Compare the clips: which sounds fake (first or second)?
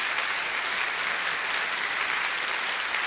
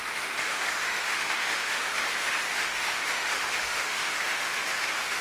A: second